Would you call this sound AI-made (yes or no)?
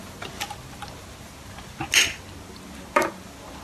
no